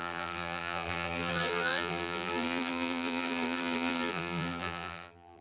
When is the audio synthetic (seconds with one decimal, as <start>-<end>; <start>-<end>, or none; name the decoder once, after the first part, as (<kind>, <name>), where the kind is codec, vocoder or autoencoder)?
0.0-5.4 (vocoder, BigVGAN v2)